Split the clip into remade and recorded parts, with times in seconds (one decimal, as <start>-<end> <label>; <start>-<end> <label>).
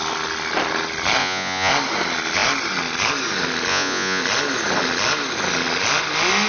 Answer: 0.0-1.2 recorded; 1.2-1.7 remade; 1.7-3.7 recorded; 3.7-4.2 remade; 4.2-6.5 recorded